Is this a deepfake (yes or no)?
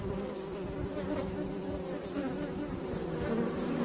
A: no